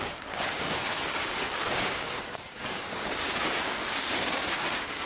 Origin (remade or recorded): remade